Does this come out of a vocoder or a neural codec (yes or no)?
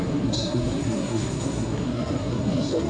yes